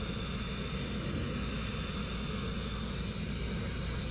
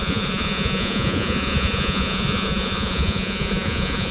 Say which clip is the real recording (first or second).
first